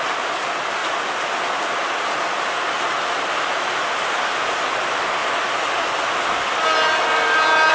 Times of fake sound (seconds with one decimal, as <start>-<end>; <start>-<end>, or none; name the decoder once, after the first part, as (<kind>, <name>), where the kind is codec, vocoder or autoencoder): none